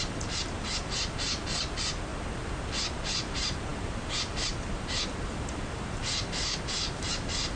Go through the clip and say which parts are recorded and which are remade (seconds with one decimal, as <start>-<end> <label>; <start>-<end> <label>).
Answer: 0.0-2.1 remade; 2.1-2.9 recorded; 2.9-7.6 remade